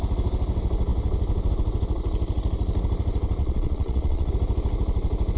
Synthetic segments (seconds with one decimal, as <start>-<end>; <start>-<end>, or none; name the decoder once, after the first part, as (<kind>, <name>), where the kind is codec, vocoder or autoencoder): 3.4-4.3 (vocoder, Vocos)